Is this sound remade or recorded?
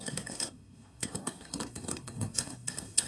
remade